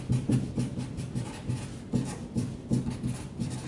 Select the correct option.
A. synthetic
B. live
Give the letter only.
A